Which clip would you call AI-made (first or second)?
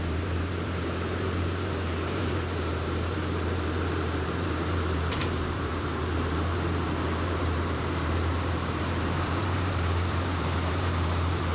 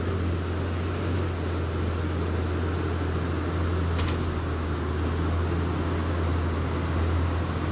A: first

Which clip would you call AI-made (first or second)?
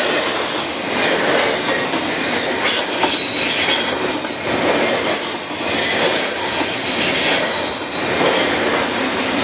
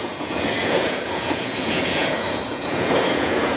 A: second